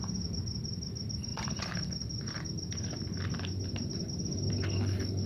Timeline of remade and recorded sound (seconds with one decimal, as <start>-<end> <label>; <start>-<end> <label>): 0.0-5.3 recorded